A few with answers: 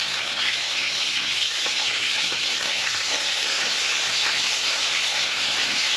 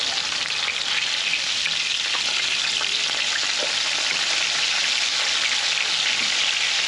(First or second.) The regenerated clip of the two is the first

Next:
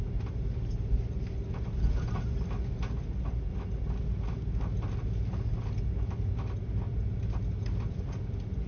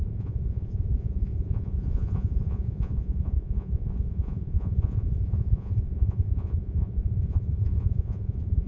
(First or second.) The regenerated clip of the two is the second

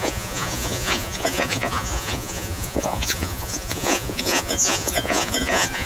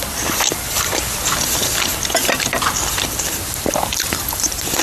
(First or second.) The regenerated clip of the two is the first